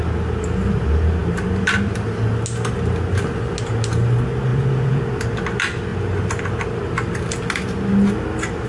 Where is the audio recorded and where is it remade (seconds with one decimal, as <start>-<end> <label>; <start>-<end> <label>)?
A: 0.0-4.5 recorded; 4.5-5.0 remade; 5.0-8.7 recorded